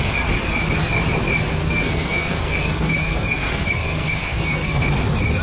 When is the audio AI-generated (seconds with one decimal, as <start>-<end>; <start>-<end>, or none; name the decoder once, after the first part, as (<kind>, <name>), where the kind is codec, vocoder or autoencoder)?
1.6-4.8 (codec, SNAC)

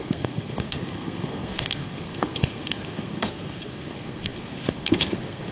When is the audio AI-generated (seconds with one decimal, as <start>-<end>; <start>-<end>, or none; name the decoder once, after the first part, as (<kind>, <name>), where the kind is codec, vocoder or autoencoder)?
0.0-5.5 (codec, SNAC)

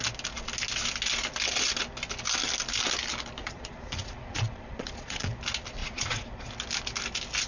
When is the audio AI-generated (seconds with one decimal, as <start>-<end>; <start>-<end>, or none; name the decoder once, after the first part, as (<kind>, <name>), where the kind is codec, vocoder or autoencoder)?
3.4-5.3 (vocoder, Vocos); 5.8-6.5

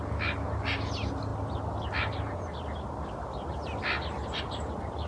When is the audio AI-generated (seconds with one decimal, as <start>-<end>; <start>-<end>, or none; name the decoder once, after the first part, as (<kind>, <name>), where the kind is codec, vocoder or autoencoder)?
none

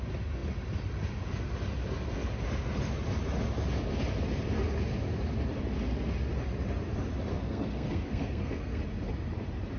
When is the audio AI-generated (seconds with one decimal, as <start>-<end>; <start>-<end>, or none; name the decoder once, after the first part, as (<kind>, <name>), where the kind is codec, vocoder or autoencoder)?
7.3-8.8 (codec, SNAC)

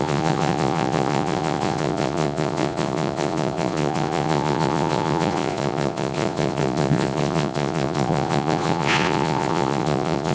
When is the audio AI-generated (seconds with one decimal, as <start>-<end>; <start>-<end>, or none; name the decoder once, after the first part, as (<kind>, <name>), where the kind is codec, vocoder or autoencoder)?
0.0-10.3 (vocoder, Vocos)

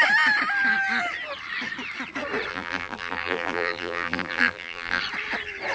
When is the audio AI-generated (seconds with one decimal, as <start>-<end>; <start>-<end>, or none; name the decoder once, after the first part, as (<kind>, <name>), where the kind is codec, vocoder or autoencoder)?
2.5-5.0 (vocoder, BigVGAN v2)

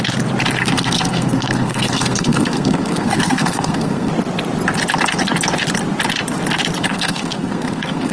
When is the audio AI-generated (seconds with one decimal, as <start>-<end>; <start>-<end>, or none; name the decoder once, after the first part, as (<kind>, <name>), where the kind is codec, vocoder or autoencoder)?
0.6-4.1 (codec, SNAC); 6.8-8.1